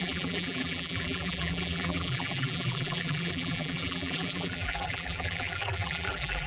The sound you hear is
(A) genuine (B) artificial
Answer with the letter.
B